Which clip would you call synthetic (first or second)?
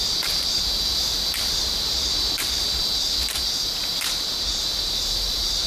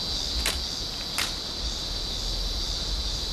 first